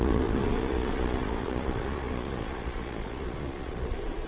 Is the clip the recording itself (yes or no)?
no